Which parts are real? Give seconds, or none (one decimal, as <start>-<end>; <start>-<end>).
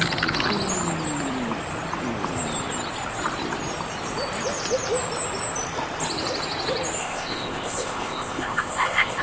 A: 0.0-7.0